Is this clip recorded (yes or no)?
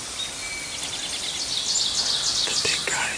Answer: yes